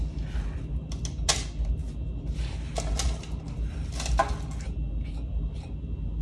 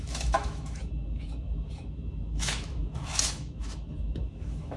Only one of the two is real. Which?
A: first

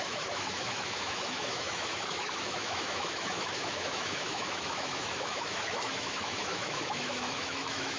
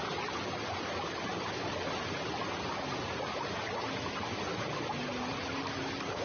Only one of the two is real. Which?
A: second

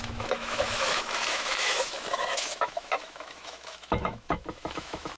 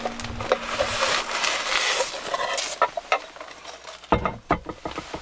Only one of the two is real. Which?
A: second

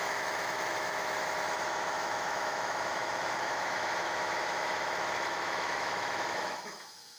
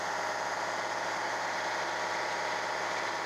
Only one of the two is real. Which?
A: second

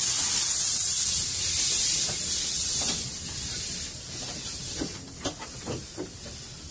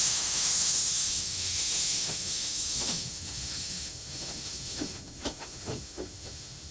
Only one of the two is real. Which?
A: first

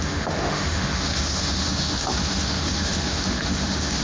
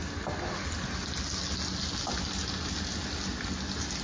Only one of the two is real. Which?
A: second